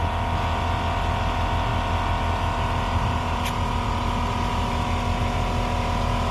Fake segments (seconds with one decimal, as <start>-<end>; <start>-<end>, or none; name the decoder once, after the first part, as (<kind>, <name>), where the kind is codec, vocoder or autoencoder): none